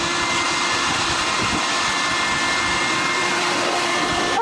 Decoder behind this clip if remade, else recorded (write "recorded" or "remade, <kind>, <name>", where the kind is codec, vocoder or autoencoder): remade, vocoder, BigVGAN v2